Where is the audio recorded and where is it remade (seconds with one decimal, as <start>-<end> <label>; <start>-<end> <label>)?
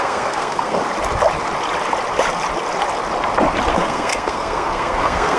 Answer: 0.0-0.8 remade; 0.8-3.7 recorded; 3.7-5.4 remade